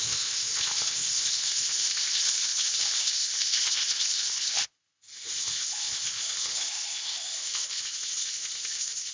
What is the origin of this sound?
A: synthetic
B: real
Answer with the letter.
A